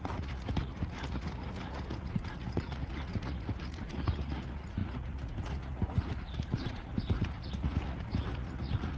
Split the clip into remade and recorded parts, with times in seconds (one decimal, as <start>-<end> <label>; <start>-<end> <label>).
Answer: 0.0-9.0 remade

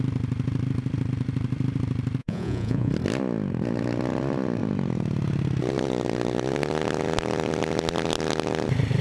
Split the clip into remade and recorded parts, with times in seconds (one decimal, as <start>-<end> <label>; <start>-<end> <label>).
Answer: 0.0-2.2 recorded; 2.2-2.9 remade; 2.9-9.0 recorded

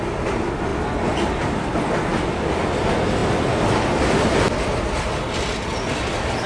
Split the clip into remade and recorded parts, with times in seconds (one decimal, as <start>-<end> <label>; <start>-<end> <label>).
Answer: 0.0-6.5 recorded